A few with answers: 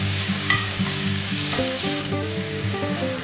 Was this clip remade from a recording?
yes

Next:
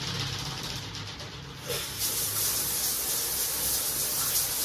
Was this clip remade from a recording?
no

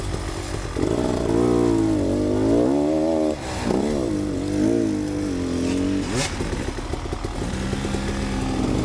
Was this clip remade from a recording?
no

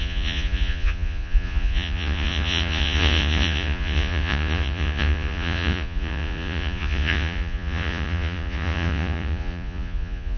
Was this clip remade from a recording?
yes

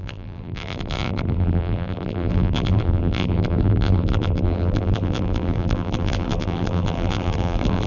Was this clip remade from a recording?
yes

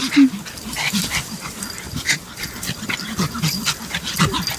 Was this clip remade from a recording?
no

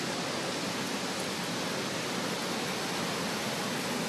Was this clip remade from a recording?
no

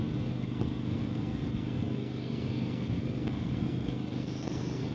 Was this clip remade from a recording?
yes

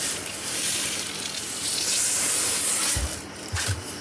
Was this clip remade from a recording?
no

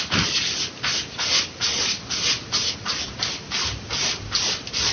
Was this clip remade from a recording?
no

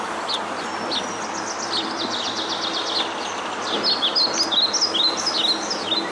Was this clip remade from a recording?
no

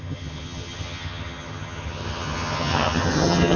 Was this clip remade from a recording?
yes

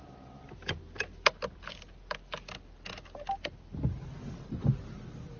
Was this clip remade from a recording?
no